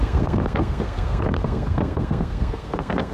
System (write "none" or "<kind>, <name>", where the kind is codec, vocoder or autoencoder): codec, SNAC